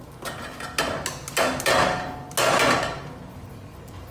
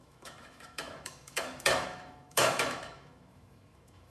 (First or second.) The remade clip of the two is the second